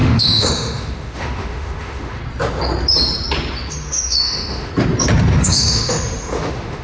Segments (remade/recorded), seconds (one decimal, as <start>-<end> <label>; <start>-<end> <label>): 0.0-2.2 remade; 2.2-3.7 recorded; 3.7-4.7 remade; 4.7-5.4 recorded; 5.4-6.8 remade